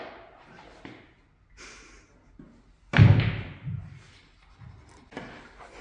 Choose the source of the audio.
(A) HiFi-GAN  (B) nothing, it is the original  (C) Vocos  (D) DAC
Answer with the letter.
B